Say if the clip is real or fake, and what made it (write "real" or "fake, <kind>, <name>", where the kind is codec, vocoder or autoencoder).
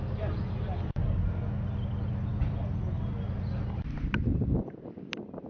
real